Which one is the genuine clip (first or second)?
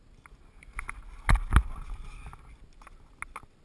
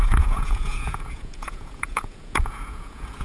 first